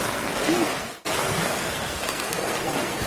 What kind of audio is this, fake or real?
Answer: fake